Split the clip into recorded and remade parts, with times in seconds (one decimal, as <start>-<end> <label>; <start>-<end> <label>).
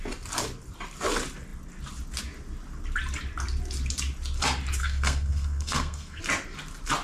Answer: 0.0-4.8 recorded; 4.8-6.2 remade; 6.2-7.0 recorded